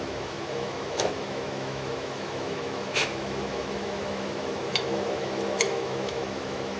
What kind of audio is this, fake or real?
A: fake